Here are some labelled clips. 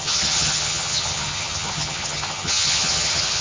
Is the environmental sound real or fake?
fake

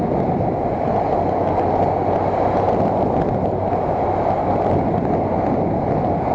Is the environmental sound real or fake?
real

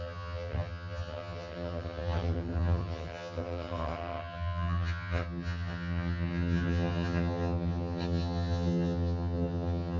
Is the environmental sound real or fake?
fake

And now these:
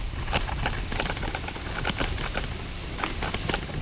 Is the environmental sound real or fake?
real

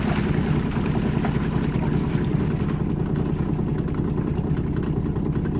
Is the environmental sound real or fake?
real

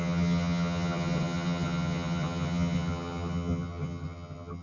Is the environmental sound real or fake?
fake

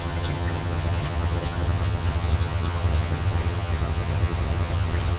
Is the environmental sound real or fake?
fake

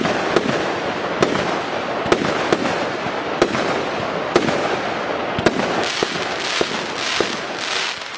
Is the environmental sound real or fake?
real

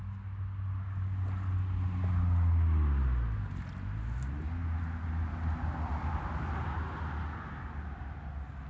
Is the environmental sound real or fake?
real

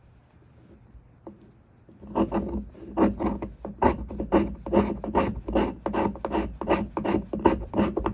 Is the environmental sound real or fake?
real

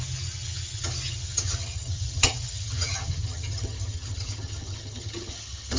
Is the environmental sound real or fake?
fake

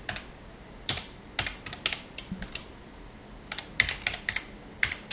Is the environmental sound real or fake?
real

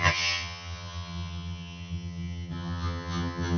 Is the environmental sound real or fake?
fake